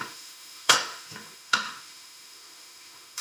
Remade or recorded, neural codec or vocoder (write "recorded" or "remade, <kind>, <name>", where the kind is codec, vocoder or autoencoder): remade, autoencoder, DAC-VAE